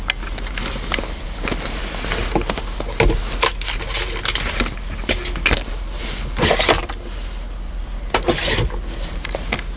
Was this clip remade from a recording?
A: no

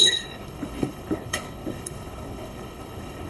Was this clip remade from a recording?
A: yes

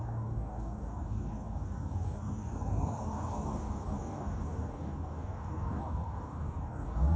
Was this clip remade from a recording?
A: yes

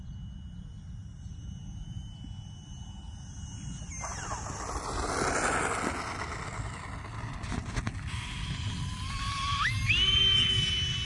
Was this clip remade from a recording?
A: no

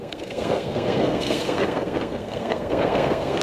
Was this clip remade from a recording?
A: yes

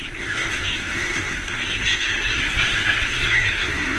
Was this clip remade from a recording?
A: yes